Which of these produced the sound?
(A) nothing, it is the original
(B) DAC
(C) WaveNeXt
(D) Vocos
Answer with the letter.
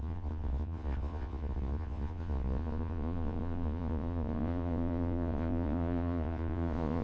D